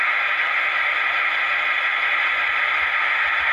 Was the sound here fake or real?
real